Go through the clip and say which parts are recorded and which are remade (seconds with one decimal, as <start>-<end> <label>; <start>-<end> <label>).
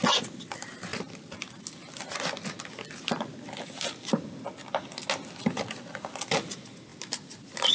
0.0-7.7 recorded